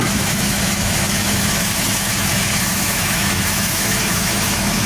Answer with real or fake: fake